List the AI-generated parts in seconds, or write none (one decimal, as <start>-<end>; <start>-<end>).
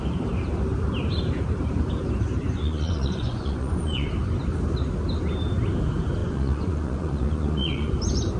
2.4-4.1; 6.2-7.9